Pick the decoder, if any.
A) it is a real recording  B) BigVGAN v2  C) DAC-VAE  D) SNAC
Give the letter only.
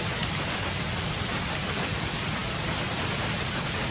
B